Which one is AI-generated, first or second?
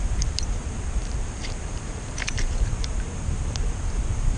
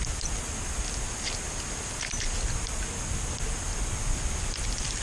first